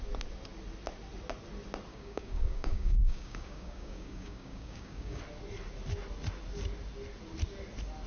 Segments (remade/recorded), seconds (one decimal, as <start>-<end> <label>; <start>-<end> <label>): 0.0-1.9 recorded; 1.9-5.2 remade; 5.2-8.1 recorded